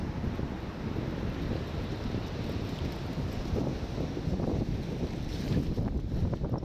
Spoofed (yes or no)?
no